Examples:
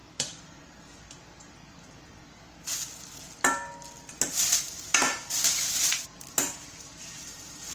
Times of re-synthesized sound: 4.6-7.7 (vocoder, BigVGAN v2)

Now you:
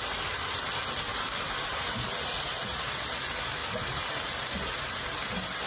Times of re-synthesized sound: 1.1-2.9 (vocoder, BigVGAN v2)